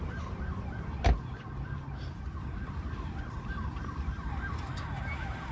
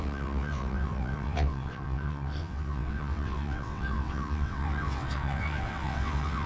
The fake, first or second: second